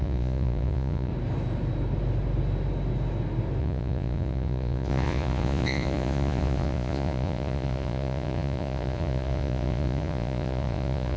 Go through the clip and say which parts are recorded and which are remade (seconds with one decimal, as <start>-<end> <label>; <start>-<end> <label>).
0.0-1.1 remade; 1.1-3.6 recorded; 3.6-11.2 remade